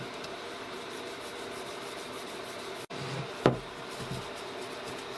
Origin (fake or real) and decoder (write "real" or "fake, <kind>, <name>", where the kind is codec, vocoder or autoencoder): real